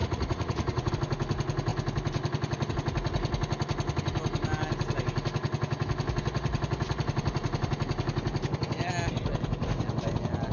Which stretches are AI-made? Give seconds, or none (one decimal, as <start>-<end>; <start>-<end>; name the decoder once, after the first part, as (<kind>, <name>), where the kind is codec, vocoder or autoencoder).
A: 0.0-0.9 (vocoder, Vocos)